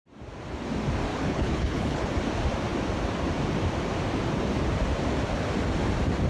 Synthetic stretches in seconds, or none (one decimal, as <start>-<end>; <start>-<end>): 1.1-2.1